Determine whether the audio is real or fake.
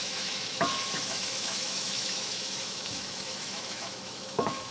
fake